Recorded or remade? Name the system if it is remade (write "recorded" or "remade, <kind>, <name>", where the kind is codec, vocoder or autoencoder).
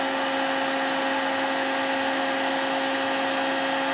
recorded